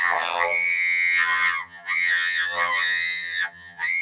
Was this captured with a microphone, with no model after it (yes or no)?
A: no